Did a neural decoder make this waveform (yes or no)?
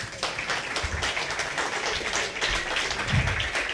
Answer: no